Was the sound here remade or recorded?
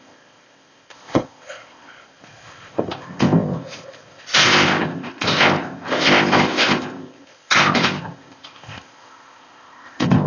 remade